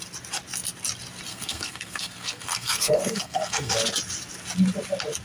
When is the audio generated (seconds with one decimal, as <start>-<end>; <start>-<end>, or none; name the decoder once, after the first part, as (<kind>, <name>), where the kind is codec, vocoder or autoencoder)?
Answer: 1.3-3.7 (codec, SNAC)

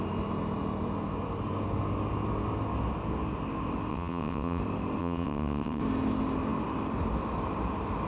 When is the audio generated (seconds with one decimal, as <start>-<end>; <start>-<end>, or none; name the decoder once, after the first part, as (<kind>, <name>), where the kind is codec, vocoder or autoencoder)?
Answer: 3.9-4.6 (vocoder, WaveNeXt); 5.0-5.8